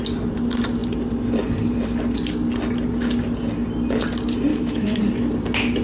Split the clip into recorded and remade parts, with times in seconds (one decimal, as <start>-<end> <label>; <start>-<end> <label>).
0.0-4.5 recorded; 4.5-5.0 remade; 5.0-5.8 recorded